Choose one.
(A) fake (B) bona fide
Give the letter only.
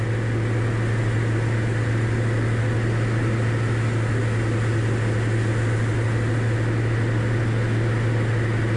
B